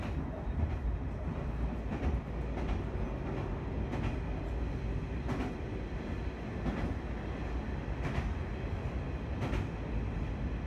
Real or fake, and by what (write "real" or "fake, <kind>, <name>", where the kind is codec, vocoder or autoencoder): real